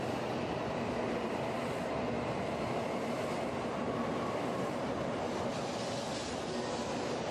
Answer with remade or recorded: recorded